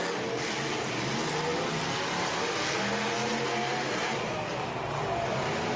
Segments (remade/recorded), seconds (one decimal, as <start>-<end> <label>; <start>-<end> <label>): 0.0-5.8 recorded